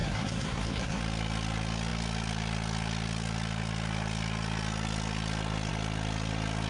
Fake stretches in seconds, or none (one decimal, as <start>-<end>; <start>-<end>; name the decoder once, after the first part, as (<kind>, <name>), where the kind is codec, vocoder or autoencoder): 0.0-1.0 (codec, SNAC)